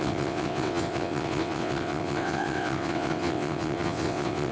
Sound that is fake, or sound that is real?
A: fake